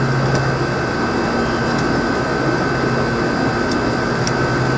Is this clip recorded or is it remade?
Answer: recorded